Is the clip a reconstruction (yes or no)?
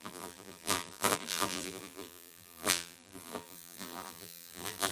yes